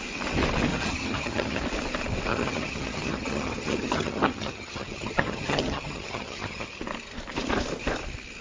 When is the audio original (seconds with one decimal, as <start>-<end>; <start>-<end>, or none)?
0.0-0.7; 1.6-2.3; 6.8-8.4